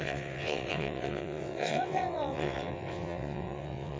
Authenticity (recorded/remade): remade